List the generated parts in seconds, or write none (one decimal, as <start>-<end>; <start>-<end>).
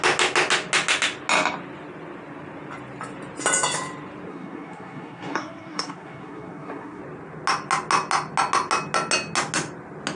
4.3-7.0